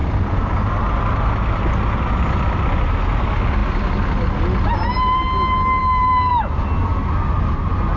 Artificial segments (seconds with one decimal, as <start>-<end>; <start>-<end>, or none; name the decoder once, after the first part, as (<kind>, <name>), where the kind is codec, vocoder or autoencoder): none